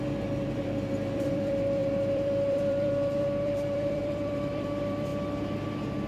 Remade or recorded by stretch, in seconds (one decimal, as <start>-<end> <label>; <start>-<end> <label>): 0.0-5.1 remade; 5.1-6.1 recorded